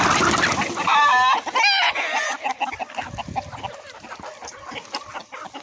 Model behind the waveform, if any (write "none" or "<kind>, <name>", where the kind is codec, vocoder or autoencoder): none